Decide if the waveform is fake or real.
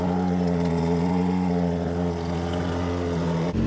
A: real